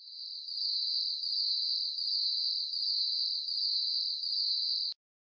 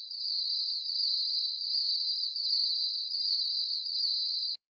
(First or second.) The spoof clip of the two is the second